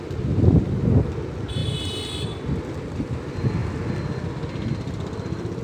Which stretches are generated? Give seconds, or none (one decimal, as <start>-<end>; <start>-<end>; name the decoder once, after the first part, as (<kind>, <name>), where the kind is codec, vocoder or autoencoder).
none